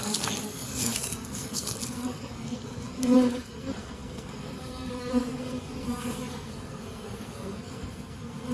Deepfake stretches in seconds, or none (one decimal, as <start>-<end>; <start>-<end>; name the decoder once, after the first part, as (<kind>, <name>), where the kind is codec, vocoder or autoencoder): 0.0-8.5 (codec, SNAC)